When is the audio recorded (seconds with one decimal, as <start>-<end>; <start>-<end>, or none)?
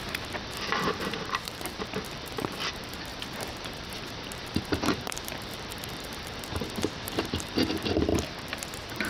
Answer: 8.1-8.6